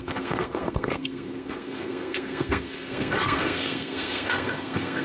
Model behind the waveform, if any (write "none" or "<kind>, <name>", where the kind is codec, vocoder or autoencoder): codec, SNAC